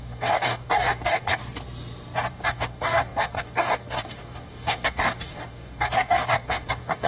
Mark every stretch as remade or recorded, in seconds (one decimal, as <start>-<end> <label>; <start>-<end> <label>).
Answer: 0.0-1.4 remade; 1.4-2.3 recorded; 2.3-7.1 remade